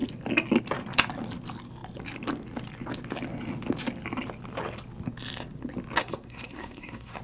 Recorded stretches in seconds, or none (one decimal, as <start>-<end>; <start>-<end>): 0.0-6.0